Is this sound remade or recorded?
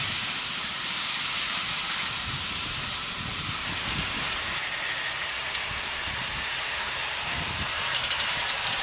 remade